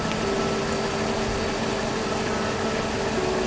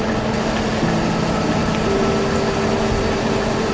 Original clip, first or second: second